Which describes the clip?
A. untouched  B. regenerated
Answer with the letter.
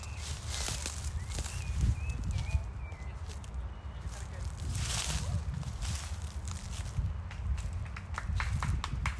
A